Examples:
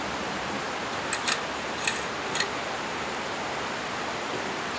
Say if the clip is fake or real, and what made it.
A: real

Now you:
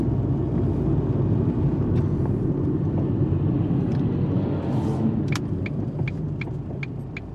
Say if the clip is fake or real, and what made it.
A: real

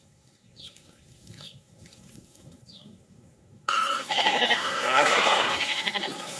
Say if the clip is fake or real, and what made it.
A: fake, codec, SNAC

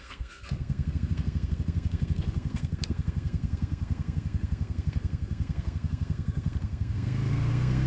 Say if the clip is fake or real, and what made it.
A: fake, codec, SNAC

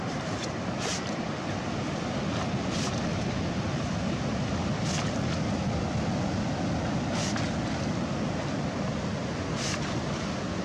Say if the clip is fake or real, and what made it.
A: real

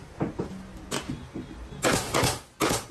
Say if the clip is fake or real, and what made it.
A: real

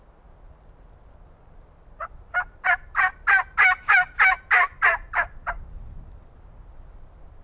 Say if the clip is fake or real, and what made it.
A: real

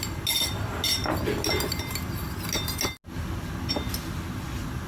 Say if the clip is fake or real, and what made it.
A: real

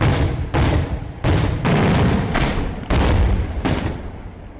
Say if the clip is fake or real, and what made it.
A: real